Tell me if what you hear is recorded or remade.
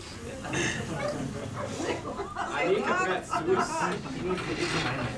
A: recorded